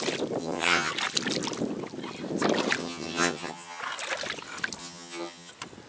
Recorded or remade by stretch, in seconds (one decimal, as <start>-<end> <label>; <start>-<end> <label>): 0.0-0.4 recorded; 0.4-0.9 remade; 0.9-2.8 recorded; 2.8-3.8 remade; 3.8-4.8 recorded; 4.8-5.5 remade; 5.5-5.9 recorded

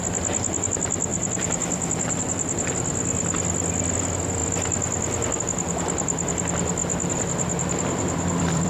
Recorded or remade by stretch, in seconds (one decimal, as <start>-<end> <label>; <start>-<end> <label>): 0.0-1.1 recorded; 1.1-2.7 remade; 2.7-6.8 recorded; 6.8-8.7 remade

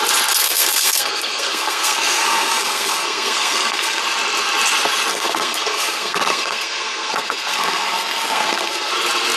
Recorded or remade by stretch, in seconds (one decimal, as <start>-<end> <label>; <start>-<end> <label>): 0.0-0.4 recorded; 0.4-4.0 remade; 4.0-5.1 recorded; 5.1-8.9 remade; 8.9-9.4 recorded

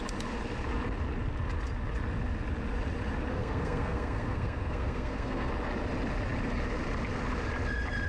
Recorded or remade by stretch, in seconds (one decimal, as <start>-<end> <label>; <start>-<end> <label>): 0.0-3.3 recorded; 3.3-5.5 remade; 5.5-8.1 recorded

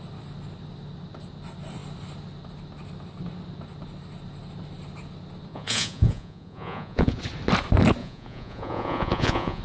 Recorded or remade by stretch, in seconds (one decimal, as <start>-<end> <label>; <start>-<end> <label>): 0.0-5.5 recorded; 5.5-7.2 remade; 7.2-8.0 recorded; 8.0-9.6 remade

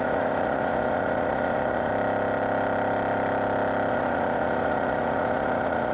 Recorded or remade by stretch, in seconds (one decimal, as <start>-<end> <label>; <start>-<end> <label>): 0.0-1.9 remade; 1.9-3.9 recorded; 3.9-5.9 remade